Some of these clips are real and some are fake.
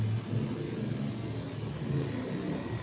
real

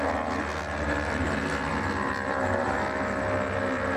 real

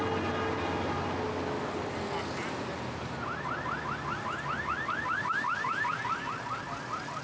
real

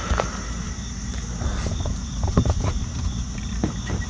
fake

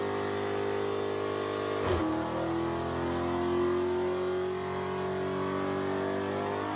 real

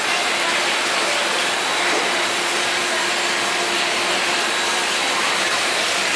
real